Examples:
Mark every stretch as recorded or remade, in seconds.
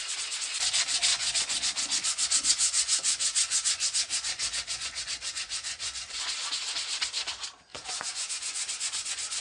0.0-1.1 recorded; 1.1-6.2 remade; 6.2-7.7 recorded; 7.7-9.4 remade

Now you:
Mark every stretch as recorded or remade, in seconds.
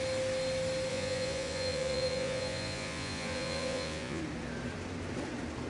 0.0-0.9 recorded; 0.9-4.2 remade; 4.2-5.7 recorded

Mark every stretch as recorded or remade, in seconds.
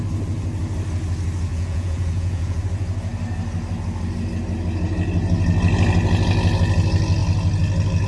0.0-1.5 recorded; 1.5-2.6 remade; 2.6-8.1 recorded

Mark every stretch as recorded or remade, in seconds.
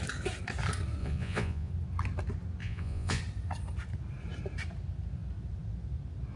0.0-1.0 recorded; 1.0-1.7 remade; 1.7-2.6 recorded; 2.6-3.2 remade; 3.2-6.4 recorded